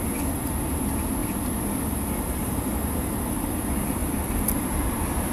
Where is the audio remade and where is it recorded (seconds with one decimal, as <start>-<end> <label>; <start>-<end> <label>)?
0.0-4.0 recorded; 4.0-4.6 remade; 4.6-5.3 recorded